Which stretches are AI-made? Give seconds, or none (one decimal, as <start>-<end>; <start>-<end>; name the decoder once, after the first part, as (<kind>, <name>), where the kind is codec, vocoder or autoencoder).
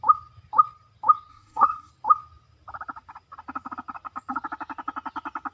1.3-1.9 (codec, SNAC)